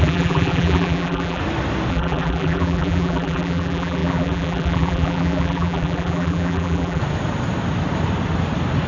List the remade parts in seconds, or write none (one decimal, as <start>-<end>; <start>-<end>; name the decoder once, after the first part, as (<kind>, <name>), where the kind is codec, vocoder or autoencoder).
0.0-1.4 (vocoder, BigVGAN v2); 1.9-7.0